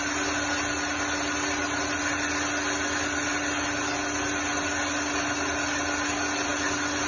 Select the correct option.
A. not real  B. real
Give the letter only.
B